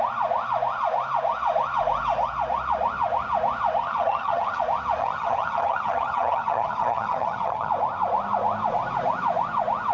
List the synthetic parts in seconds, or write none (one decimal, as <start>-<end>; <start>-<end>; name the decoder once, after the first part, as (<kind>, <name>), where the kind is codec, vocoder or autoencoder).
3.8-4.6 (vocoder, HiFi-GAN); 5.0-7.7